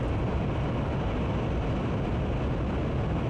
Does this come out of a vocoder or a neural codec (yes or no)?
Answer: no